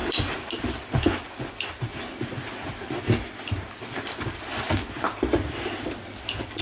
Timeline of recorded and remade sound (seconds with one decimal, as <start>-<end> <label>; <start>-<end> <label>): 0.0-6.6 remade